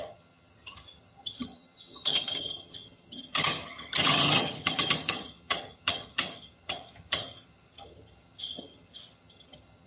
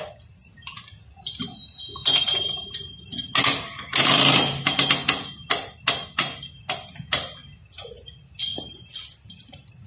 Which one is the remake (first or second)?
first